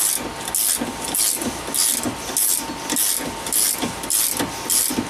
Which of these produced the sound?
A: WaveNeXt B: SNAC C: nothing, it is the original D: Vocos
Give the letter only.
C